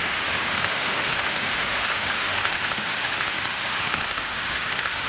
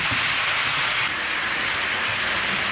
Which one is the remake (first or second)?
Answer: first